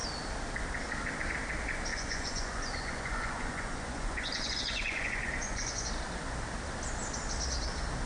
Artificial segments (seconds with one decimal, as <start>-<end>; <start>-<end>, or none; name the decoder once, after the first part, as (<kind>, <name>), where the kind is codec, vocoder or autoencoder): 1.9-5.9 (vocoder, Vocos)